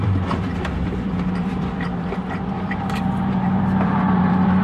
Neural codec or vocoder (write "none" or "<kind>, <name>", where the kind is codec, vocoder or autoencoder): vocoder, BigVGAN v2